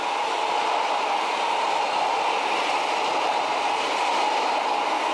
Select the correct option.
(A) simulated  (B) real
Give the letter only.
B